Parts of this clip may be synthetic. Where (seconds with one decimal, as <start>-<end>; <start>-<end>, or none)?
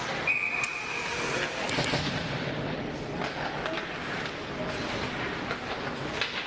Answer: none